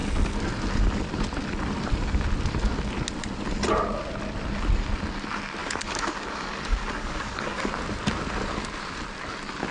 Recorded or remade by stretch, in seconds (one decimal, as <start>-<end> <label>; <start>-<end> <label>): 0.0-5.6 recorded; 5.6-7.7 remade; 7.7-9.7 recorded